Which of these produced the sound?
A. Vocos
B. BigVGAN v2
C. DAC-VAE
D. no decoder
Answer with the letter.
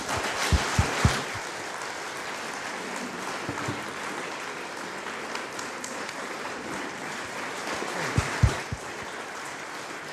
D